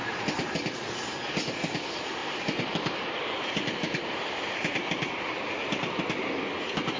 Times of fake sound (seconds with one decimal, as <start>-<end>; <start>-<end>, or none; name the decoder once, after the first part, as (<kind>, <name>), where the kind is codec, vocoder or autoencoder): 2.2-6.4 (vocoder, BigVGAN v2)